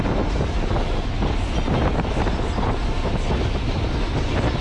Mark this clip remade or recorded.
recorded